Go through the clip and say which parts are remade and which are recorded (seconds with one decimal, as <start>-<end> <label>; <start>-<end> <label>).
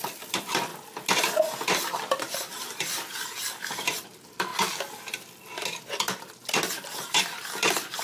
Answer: 0.0-0.7 remade; 0.7-1.9 recorded; 1.9-4.5 remade; 4.5-6.3 recorded; 6.3-8.0 remade